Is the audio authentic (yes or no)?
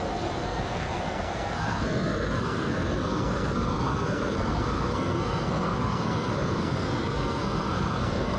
no